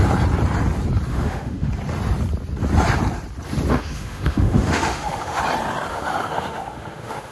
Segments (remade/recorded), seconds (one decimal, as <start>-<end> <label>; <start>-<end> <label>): 0.0-1.1 recorded; 1.1-1.7 remade; 1.7-3.7 recorded; 3.7-5.4 remade; 5.4-5.9 recorded; 5.9-7.3 remade